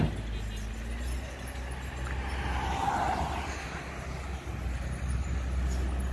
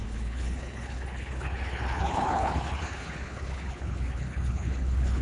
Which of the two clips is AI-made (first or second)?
second